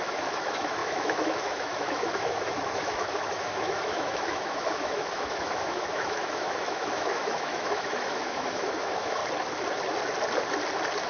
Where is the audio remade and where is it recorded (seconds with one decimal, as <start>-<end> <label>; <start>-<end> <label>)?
0.0-9.2 remade; 9.2-11.1 recorded